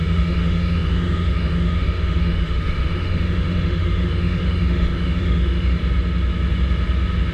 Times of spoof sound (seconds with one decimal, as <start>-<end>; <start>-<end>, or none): 0.0-5.8